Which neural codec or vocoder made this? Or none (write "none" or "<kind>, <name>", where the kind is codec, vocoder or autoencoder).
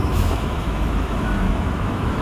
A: autoencoder, DAC-VAE